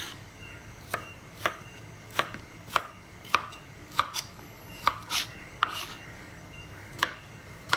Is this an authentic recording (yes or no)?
no